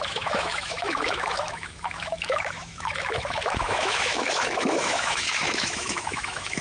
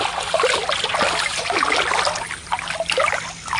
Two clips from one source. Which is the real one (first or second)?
second